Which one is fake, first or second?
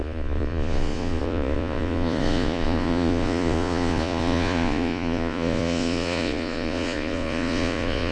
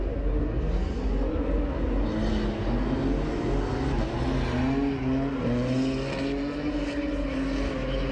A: first